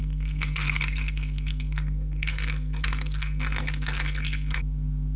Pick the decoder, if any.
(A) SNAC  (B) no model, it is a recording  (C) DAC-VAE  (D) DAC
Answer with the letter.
A